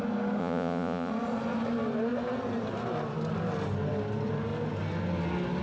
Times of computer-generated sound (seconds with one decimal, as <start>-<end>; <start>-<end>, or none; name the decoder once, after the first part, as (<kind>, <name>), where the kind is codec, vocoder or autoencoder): 0.4-1.1 (vocoder, Vocos)